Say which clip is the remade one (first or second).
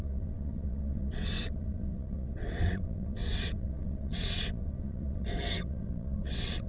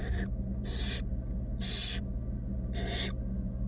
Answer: first